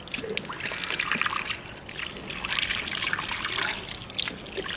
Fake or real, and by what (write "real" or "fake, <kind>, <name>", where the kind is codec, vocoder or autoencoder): real